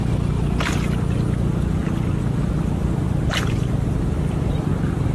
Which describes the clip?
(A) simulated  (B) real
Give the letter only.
B